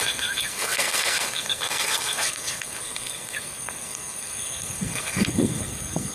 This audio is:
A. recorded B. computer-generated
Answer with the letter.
B